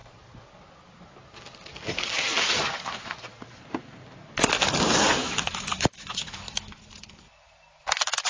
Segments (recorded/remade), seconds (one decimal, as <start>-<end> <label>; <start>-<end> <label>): 0.0-5.2 recorded; 5.2-6.8 remade; 6.8-8.3 recorded